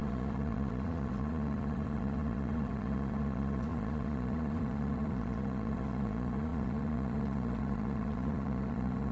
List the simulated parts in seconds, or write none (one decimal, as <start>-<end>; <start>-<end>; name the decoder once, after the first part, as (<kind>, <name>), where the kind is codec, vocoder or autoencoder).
0.0-9.1 (vocoder, Vocos)